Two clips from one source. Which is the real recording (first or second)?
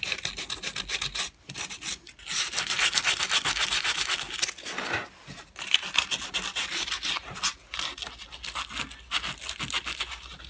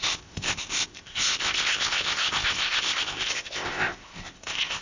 first